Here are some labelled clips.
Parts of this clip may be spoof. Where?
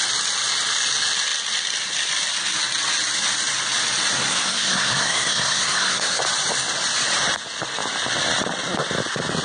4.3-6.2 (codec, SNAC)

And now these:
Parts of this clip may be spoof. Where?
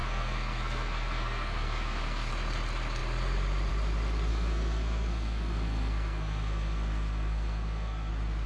0.0-2.3 (codec, SNAC); 4.3-8.1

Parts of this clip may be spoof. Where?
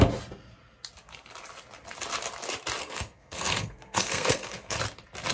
2.8-4.8 (codec, SNAC)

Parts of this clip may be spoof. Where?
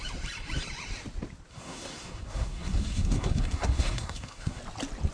1.5-4.6 (codec, SNAC)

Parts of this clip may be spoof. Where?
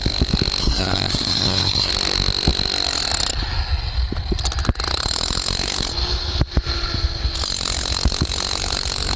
0.6-1.9 (codec, SNAC)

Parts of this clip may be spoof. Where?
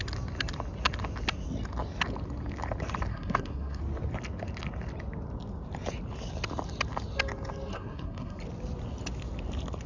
3.1-3.8 (codec, SNAC); 7.7-8.4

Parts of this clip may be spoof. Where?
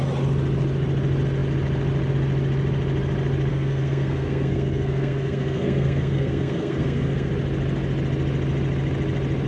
3.5-7.3 (codec, SNAC)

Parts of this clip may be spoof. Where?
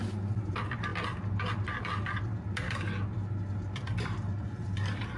none